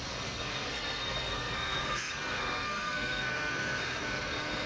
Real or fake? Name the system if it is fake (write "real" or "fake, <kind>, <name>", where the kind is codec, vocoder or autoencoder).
fake, codec, SNAC